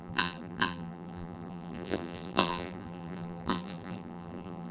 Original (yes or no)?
no